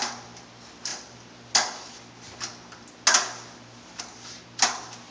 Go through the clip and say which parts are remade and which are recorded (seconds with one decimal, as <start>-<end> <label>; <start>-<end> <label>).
0.0-5.1 recorded